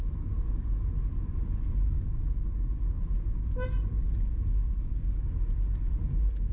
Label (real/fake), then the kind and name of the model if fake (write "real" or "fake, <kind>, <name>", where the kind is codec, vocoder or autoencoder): real